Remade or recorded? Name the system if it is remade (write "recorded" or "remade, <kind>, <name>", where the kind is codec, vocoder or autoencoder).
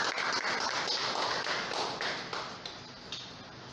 recorded